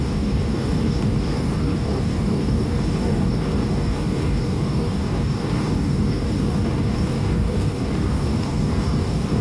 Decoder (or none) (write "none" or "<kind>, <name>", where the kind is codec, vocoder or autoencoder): codec, DAC